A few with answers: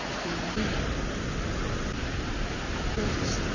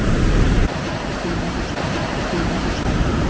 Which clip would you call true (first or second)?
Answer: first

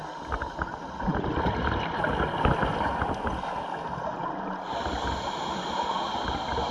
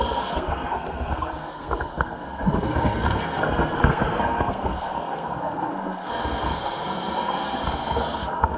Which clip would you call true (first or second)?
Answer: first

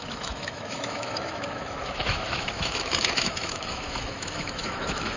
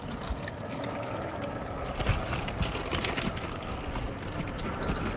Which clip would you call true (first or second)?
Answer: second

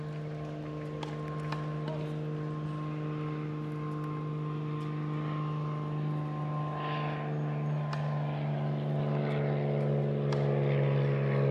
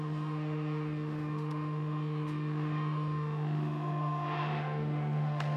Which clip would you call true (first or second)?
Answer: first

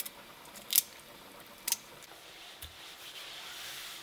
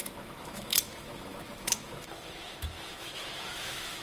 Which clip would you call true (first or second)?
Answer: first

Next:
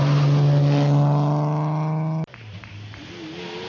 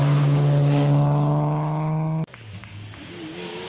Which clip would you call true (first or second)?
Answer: first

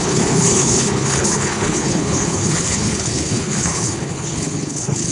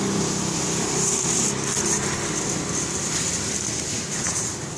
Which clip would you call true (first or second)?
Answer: second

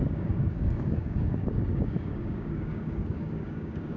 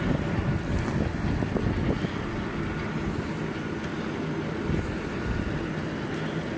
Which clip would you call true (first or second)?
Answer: second